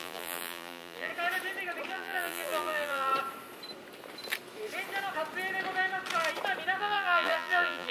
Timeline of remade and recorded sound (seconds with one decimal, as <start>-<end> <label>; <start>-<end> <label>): 0.0-1.1 remade; 1.1-1.9 recorded; 1.9-3.1 remade; 3.1-6.8 recorded; 6.8-7.9 remade